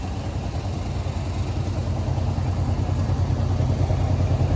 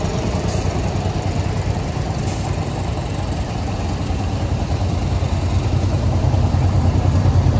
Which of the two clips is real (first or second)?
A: first